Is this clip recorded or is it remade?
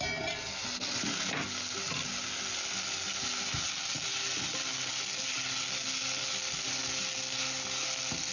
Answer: recorded